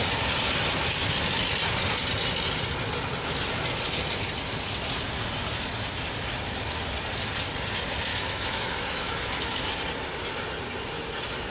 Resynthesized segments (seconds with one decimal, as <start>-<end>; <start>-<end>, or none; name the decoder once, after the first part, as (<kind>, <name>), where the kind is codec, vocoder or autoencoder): 8.1-9.8 (autoencoder, DAC-VAE)